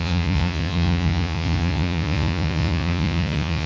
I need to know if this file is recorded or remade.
remade